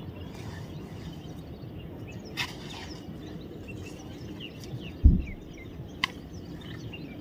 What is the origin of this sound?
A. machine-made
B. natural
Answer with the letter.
B